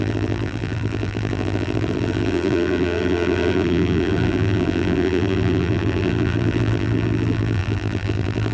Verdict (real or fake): fake